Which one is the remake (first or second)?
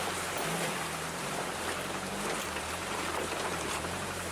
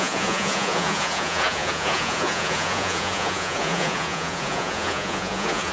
second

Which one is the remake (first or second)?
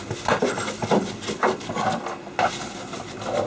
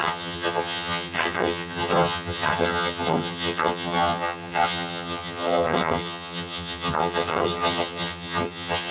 second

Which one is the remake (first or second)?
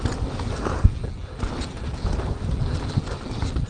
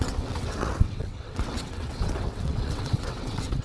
second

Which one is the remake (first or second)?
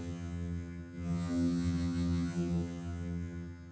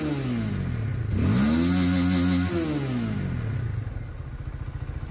first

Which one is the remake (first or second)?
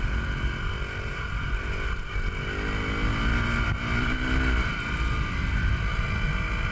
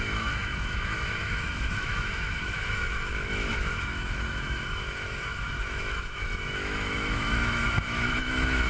second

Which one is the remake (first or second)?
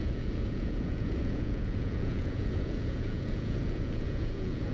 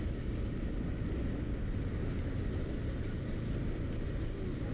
first